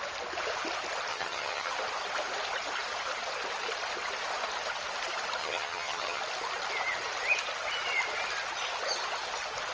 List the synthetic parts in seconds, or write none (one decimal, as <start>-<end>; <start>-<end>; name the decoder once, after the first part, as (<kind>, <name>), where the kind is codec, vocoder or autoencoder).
1.1-1.7 (vocoder, HiFi-GAN); 5.4-6.2